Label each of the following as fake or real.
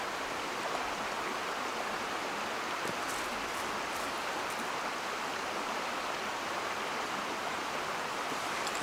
real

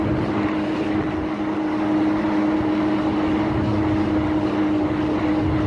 real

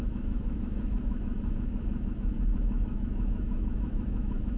fake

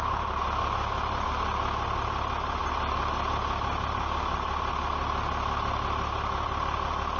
real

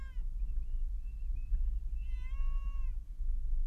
real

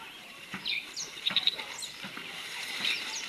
fake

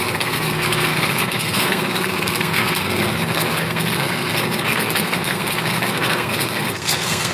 fake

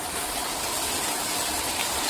fake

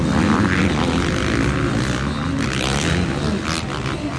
real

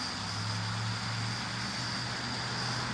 real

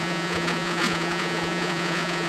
fake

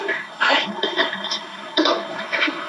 fake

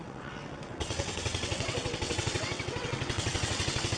fake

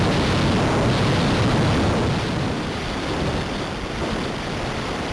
real